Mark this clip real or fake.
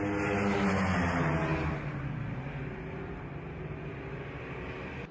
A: real